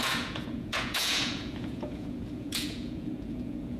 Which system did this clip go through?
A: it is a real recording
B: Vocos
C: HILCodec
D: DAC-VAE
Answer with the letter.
B